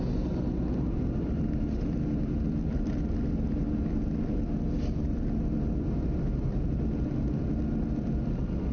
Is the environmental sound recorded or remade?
recorded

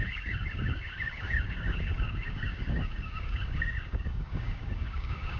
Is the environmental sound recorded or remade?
remade